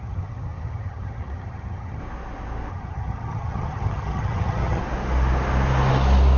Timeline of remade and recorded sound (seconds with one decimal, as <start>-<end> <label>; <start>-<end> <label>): 0.0-2.0 remade; 2.0-2.7 recorded; 2.7-4.8 remade; 4.8-6.4 recorded